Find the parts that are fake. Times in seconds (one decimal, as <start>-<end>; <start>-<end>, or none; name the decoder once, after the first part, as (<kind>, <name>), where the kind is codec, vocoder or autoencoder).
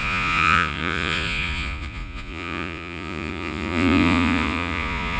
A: 0.0-5.2 (vocoder, Vocos)